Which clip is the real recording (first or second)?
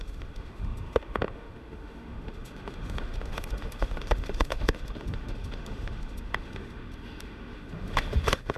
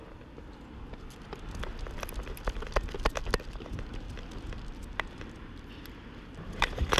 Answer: second